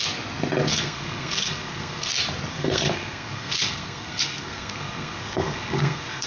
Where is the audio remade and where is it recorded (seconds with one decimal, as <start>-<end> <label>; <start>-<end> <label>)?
0.0-0.7 recorded; 0.7-2.1 remade; 2.1-2.5 recorded; 2.5-6.3 remade